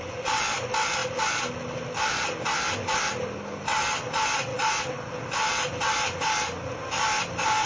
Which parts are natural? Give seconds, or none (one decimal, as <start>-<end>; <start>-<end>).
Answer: 0.0-7.7